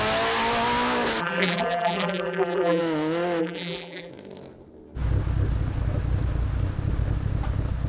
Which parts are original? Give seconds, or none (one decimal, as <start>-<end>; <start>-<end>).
0.0-1.2; 2.8-3.4; 4.1-7.9